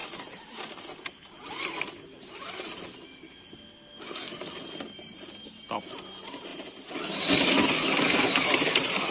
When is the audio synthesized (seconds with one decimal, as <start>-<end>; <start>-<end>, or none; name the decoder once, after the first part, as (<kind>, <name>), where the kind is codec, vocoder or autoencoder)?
none